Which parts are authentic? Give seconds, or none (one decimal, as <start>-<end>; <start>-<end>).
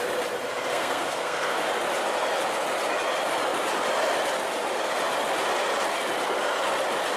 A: 0.0-0.7; 1.7-7.2